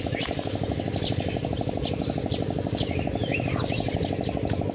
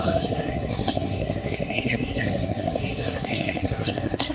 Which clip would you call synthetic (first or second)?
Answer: second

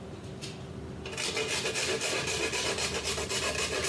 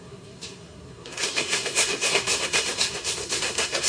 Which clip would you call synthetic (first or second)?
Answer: second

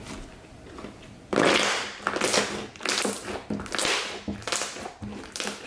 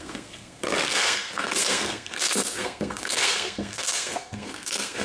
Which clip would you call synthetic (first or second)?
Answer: second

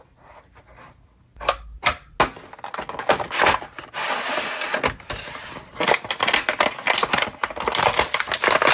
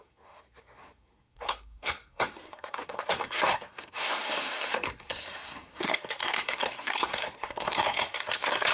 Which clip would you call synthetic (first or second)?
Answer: second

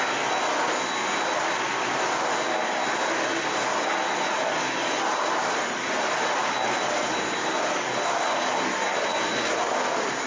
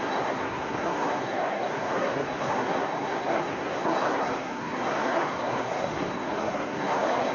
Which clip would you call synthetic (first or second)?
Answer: second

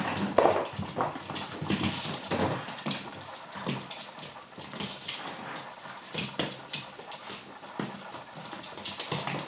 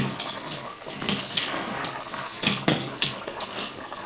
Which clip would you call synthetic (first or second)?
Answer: second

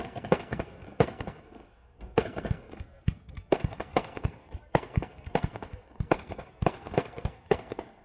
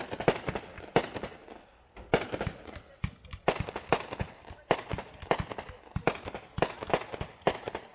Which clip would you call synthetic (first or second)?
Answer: first